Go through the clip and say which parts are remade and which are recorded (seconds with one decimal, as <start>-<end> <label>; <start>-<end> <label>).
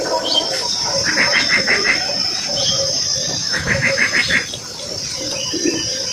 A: 0.0-3.4 recorded; 3.4-4.1 remade; 4.1-6.1 recorded